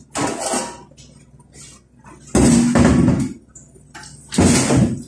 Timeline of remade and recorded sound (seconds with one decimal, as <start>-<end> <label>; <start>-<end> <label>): 0.0-5.1 recorded